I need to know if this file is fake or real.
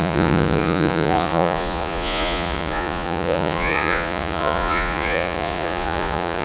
fake